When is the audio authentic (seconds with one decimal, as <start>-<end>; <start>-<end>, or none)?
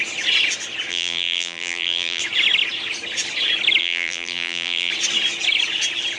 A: 0.0-0.9; 2.2-3.8; 4.9-6.2